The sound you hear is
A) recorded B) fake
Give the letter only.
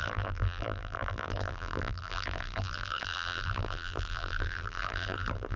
B